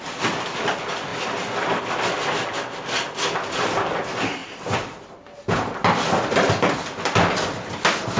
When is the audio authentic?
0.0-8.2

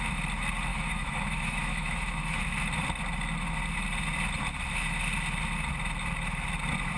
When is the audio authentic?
0.0-0.7; 2.4-7.0

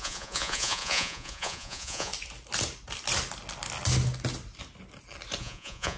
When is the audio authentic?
2.1-5.4

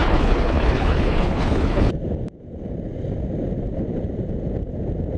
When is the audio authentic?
1.9-5.2

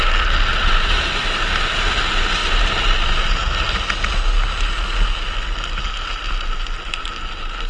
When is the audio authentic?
0.0-7.7

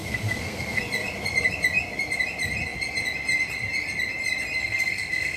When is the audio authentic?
0.8-4.6

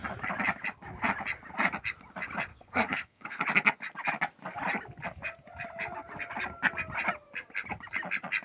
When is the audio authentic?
0.0-2.5; 3.4-8.4